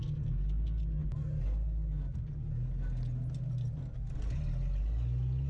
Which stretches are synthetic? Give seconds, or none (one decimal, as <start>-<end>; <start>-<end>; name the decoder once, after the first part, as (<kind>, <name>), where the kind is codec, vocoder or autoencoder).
none